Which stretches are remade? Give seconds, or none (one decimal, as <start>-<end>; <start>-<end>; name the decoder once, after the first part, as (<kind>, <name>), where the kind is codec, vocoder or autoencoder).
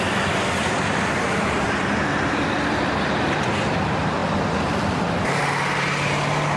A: none